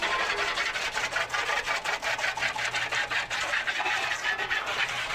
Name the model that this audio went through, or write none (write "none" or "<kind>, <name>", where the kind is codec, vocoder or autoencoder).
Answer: none